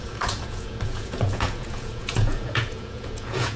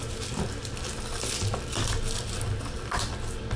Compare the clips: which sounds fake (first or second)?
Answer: first